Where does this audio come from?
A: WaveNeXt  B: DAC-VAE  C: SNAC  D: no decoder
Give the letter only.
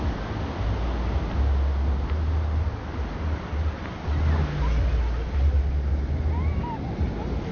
D